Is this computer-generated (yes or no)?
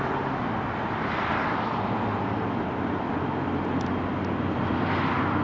no